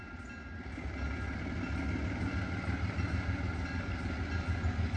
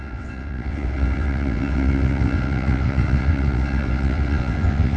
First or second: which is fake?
second